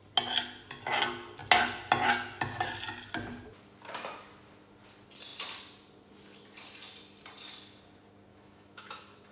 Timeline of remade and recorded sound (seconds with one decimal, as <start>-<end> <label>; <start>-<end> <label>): 0.0-8.3 recorded; 8.3-9.3 remade

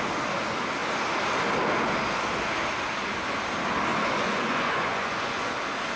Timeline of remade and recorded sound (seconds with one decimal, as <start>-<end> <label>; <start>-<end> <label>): 0.0-3.9 recorded; 3.9-5.5 remade; 5.5-6.0 recorded

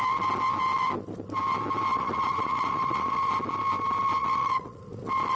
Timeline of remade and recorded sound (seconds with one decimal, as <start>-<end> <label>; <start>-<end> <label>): 0.0-1.9 recorded; 1.9-3.3 remade; 3.3-4.2 recorded; 4.2-4.8 remade; 4.8-5.4 recorded

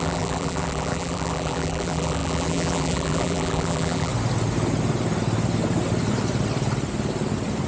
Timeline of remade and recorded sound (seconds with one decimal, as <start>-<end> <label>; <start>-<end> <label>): 0.0-4.1 remade; 4.1-7.7 recorded

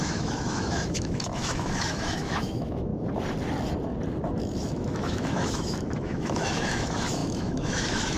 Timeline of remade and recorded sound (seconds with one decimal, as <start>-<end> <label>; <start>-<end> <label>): 0.0-2.9 remade; 2.9-4.4 recorded; 4.4-8.2 remade

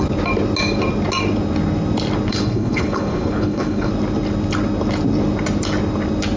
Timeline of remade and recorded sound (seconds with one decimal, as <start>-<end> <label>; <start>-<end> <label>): 0.0-2.3 recorded; 2.3-3.9 remade; 3.9-6.4 recorded

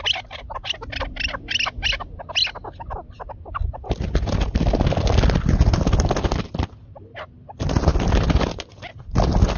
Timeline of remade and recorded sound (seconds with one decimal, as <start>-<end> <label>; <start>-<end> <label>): 0.0-9.6 recorded